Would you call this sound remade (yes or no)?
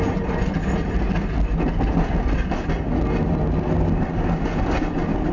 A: no